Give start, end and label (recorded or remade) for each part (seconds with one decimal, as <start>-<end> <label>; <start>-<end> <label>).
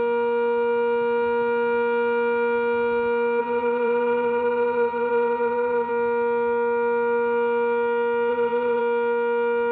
0.0-3.4 recorded; 3.4-5.9 remade; 5.9-8.3 recorded; 8.3-8.8 remade; 8.8-9.7 recorded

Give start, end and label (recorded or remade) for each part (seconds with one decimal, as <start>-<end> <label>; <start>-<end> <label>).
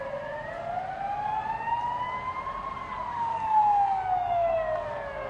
0.0-3.3 recorded; 3.3-5.3 remade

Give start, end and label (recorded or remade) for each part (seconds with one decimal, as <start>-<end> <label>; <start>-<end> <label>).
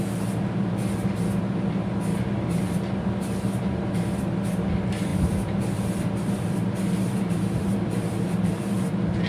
0.0-5.1 recorded; 5.1-8.9 remade; 8.9-9.3 recorded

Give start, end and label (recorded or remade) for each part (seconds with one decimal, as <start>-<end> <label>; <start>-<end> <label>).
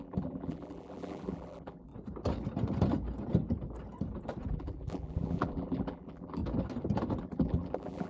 0.0-1.9 remade; 1.9-4.5 recorded; 4.5-6.4 remade; 6.4-7.2 recorded; 7.2-8.1 remade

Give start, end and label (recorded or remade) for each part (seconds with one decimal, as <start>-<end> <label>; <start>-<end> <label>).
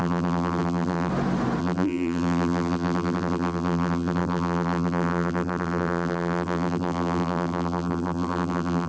0.0-1.1 remade; 1.1-1.6 recorded; 1.6-8.9 remade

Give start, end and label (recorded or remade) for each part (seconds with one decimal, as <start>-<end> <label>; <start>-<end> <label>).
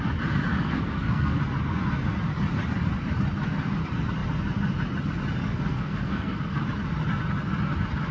0.0-0.5 recorded; 0.5-1.4 remade; 1.4-5.4 recorded; 5.4-6.6 remade; 6.6-8.1 recorded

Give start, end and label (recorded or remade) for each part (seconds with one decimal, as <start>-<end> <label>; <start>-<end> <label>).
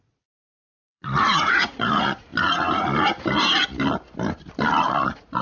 0.0-2.3 remade; 2.3-4.9 recorded; 4.9-5.4 remade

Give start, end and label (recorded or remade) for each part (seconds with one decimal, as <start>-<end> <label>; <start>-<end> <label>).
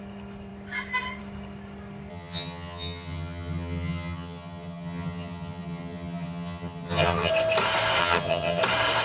0.0-2.1 recorded; 2.1-7.3 remade; 7.3-8.0 recorded; 8.0-8.6 remade; 8.6-9.0 recorded